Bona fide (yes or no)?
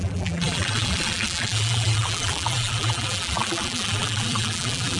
no